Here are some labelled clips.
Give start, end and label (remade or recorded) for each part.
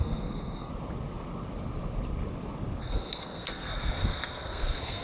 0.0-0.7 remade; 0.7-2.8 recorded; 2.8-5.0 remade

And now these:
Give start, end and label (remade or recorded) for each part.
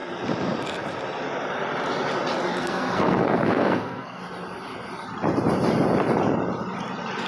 0.0-2.5 recorded; 2.5-4.2 remade; 4.2-7.3 recorded